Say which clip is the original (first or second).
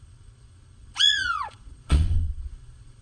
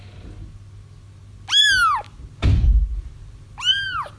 second